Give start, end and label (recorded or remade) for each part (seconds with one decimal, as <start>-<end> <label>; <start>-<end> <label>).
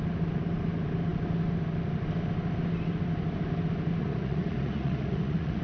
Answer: 0.0-4.0 recorded; 4.0-5.6 remade